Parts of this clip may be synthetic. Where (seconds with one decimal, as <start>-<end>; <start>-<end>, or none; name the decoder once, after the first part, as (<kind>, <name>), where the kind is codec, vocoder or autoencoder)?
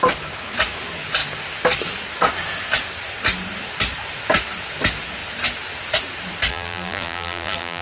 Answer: 6.5-7.8 (vocoder, BigVGAN v2)